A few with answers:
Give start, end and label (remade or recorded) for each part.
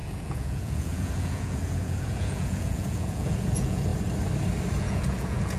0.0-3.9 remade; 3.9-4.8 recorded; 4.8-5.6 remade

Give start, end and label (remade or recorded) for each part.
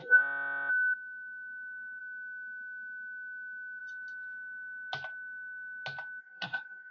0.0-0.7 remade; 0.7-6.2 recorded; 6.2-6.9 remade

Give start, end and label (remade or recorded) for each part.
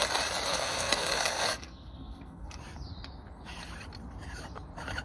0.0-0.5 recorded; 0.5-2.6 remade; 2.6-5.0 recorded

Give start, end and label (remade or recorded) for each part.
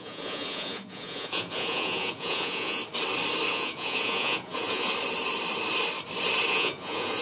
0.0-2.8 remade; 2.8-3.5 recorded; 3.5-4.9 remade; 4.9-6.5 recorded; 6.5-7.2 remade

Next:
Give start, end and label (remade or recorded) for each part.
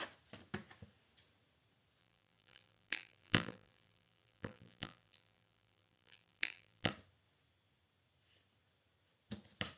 0.0-2.0 recorded; 2.0-6.9 remade; 6.9-9.8 recorded